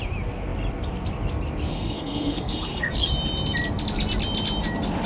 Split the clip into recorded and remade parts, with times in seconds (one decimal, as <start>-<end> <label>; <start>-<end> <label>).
0.0-1.7 recorded; 1.7-2.9 remade; 2.9-5.1 recorded